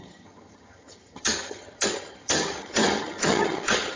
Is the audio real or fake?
fake